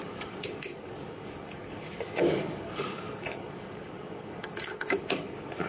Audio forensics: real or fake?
fake